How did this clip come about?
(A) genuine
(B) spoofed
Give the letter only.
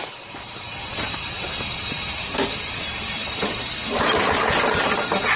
B